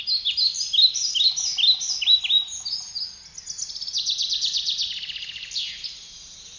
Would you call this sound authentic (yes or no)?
yes